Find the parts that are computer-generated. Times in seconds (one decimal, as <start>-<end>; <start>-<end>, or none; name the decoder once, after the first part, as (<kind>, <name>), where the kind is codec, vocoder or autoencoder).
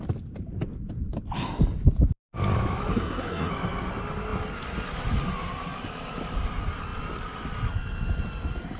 2.9-3.5 (codec, SNAC)